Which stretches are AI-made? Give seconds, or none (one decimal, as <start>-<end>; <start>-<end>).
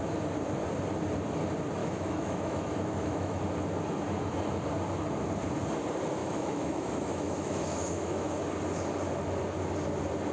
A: 1.8-3.4; 6.2-8.3